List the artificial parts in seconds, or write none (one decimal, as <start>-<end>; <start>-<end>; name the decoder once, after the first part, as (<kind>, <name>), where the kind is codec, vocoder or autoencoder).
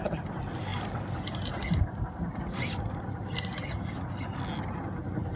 none